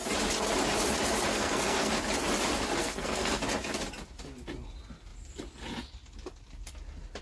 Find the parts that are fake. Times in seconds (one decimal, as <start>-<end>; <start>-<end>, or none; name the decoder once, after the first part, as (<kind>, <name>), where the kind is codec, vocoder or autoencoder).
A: 1.3-1.9 (codec, SNAC); 2.8-3.4